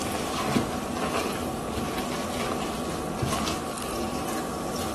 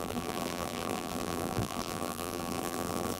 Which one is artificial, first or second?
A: second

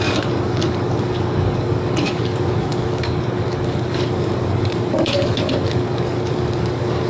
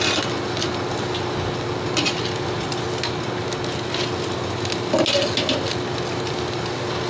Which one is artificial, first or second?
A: first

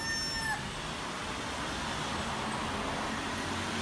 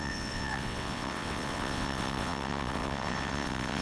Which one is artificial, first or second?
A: second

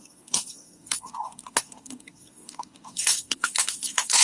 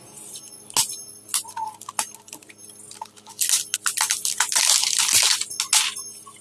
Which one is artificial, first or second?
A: first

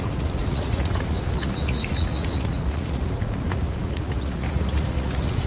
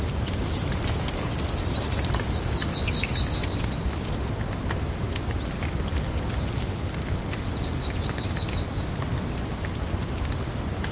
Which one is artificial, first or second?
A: first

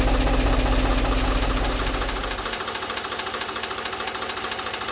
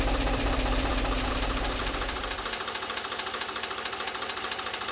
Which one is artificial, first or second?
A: second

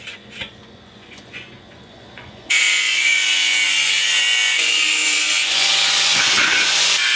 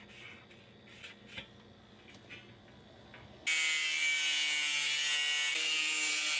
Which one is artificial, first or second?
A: first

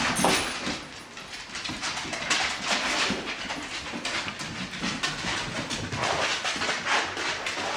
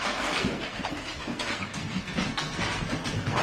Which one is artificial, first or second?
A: second